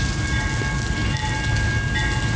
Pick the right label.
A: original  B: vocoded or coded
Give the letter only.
A